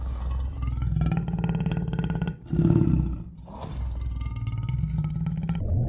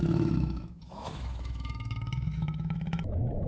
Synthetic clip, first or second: second